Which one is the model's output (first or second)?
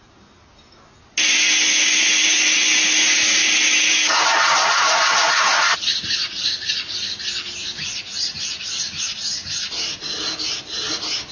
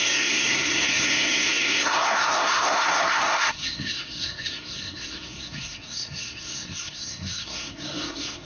second